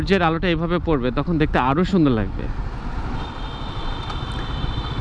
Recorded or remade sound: recorded